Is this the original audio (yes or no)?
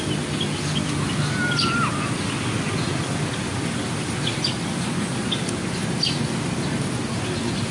yes